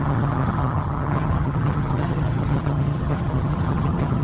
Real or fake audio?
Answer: fake